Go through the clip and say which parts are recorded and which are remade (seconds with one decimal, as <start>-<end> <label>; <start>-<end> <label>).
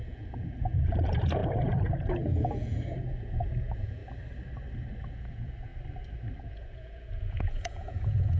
0.0-4.0 remade; 4.0-5.1 recorded; 5.1-5.7 remade; 5.7-6.4 recorded; 6.4-8.4 remade